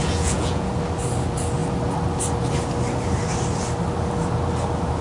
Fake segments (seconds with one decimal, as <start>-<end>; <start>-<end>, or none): 0.0-0.7

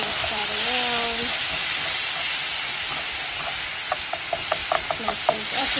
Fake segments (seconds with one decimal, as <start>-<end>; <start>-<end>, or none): 0.0-0.4; 3.9-5.8

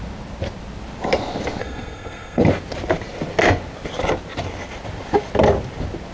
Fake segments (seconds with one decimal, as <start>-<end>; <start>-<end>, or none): 1.6-2.4

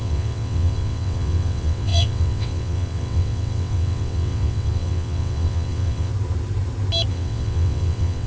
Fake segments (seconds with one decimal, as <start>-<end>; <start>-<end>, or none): 0.0-6.1; 7.1-8.3

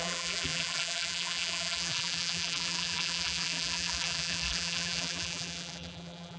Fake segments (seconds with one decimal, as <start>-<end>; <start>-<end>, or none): 0.0-6.4

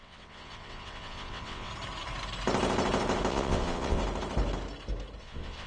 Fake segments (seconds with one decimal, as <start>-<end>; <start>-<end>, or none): 0.0-1.7; 3.3-4.0; 5.2-5.7

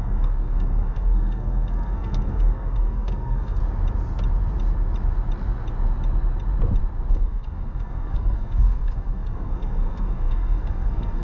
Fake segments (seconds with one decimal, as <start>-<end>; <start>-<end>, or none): 0.0-3.6; 7.1-11.2

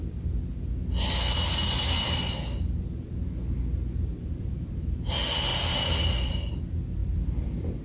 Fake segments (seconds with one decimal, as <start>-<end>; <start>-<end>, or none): 4.1-5.1; 5.5-6.5; 7.0-7.8